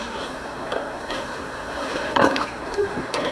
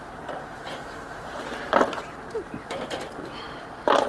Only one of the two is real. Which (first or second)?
second